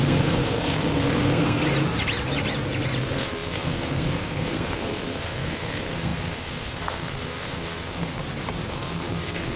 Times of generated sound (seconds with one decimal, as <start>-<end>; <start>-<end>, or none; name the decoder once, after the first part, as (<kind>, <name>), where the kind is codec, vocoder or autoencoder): 0.0-1.6 (codec, SNAC); 3.0-8.2; 8.7-9.6